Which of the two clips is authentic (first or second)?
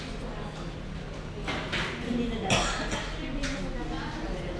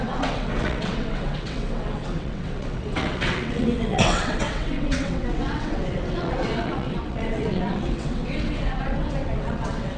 first